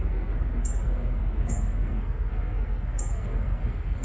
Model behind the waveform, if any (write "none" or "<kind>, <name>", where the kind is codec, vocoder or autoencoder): codec, SNAC